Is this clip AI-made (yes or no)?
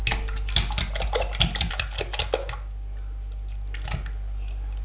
no